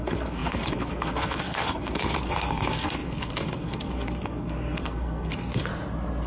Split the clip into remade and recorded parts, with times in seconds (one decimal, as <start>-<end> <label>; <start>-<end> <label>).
0.0-5.7 remade; 5.7-6.3 recorded